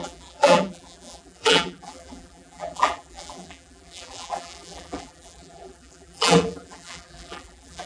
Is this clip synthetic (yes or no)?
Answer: yes